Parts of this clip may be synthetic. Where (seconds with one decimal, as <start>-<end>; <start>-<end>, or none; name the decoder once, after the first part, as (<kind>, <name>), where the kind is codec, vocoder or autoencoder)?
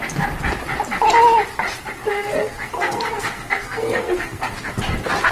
2.1-4.7 (codec, SNAC)